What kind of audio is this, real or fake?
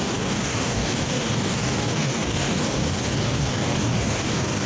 fake